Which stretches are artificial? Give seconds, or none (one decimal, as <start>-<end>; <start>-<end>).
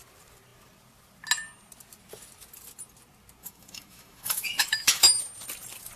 3.4-5.2